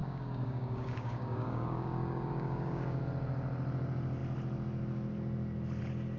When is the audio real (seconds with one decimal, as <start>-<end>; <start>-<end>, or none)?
3.0-6.2